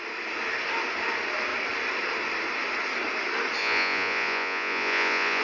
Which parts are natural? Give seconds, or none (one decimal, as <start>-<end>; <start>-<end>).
0.0-3.6